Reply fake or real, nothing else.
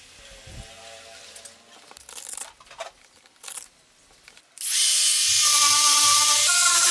real